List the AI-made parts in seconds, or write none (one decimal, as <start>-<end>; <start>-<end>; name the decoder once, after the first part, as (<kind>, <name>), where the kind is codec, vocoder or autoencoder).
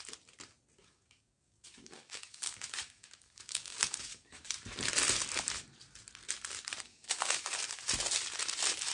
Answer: 0.8-4.5 (codec, DAC); 6.9-7.9